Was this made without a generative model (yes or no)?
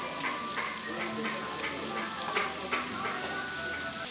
yes